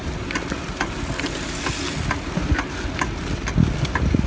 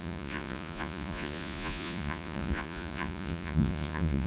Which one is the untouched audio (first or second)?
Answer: first